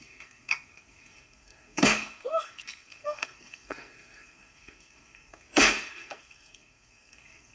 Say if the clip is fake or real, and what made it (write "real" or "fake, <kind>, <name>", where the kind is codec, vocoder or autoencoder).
fake, codec, SNAC